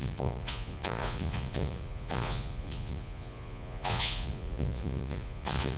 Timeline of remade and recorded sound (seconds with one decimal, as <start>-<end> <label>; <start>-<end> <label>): 0.0-5.8 remade